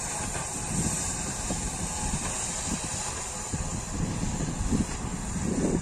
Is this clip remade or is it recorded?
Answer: recorded